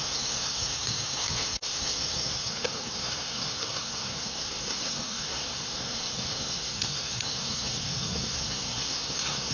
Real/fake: fake